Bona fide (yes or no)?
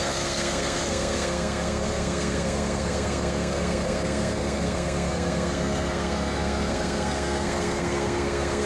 no